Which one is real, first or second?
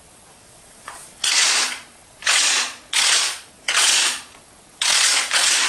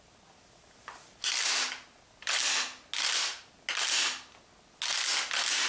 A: second